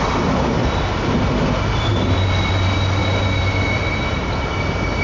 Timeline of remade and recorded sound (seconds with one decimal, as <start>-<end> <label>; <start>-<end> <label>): 0.0-5.0 recorded